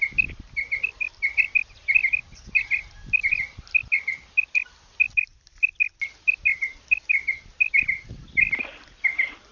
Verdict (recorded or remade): recorded